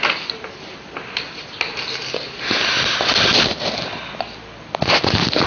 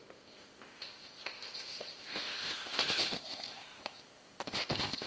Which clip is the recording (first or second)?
first